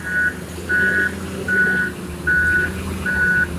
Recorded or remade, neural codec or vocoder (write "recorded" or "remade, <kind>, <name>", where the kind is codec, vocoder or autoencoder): recorded